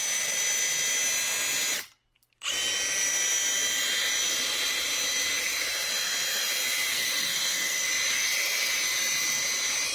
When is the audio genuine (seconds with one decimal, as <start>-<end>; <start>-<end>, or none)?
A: 0.0-6.9; 7.9-9.9